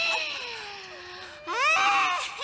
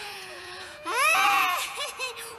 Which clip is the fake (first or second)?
second